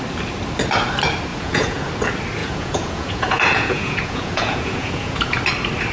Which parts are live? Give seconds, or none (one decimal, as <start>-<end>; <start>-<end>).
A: 0.0-1.3; 1.9-2.4; 5.4-5.9